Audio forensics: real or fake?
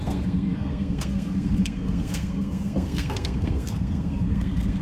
fake